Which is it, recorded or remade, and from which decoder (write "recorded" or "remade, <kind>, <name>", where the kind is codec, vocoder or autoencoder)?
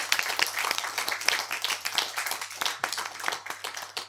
remade, vocoder, BigVGAN v2